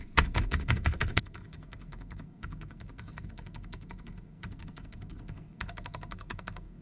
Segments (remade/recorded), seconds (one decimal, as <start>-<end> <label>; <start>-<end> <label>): 0.0-6.8 remade